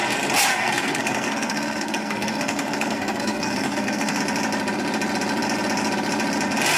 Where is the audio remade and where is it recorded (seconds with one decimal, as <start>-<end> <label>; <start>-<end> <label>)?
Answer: 0.0-0.5 recorded; 0.5-4.2 remade; 4.2-6.8 recorded